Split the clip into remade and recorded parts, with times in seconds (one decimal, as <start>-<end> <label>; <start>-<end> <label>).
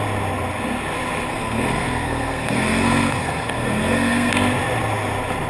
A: 0.0-1.3 recorded; 1.3-4.3 remade; 4.3-5.5 recorded